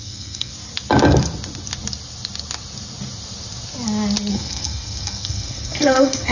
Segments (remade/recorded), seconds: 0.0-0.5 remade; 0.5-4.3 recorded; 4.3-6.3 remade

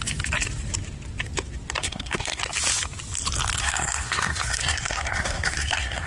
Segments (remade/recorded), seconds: 0.0-1.8 recorded; 1.8-2.4 remade; 2.4-3.6 recorded; 3.6-6.1 remade